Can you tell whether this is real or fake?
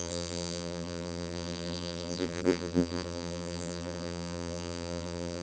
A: fake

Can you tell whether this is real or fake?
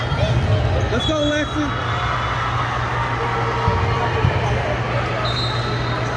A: real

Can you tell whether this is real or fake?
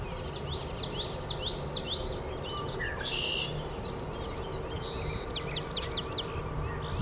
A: real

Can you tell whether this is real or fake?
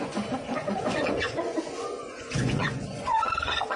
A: fake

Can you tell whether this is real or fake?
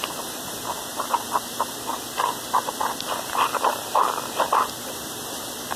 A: real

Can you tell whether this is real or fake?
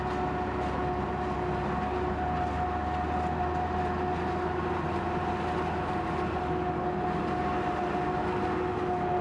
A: real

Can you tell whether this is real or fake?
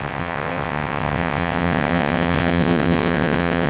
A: fake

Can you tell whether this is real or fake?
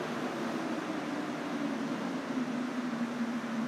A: real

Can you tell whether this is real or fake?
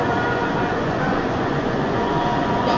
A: fake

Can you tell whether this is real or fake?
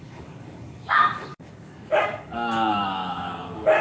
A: fake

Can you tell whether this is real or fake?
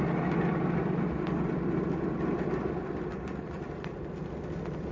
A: real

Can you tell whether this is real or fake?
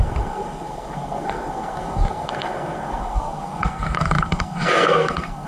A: fake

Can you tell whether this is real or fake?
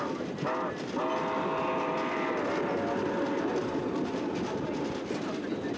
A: real